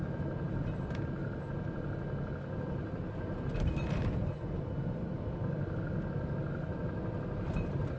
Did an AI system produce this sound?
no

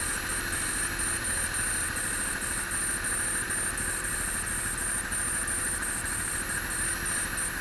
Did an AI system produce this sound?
no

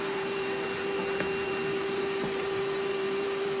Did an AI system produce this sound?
yes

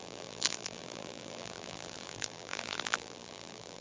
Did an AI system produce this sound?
yes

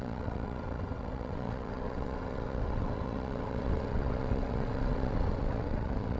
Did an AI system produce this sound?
yes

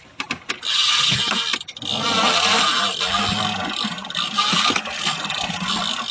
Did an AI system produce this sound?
no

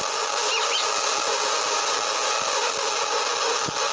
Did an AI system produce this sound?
no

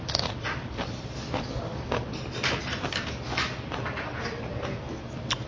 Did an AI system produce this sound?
no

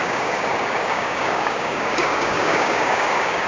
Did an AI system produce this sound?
yes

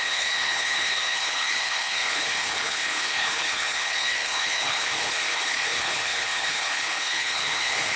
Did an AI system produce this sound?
yes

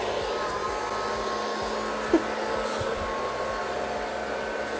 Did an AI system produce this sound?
no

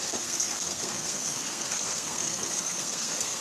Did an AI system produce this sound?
yes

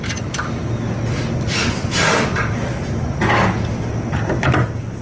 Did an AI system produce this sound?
no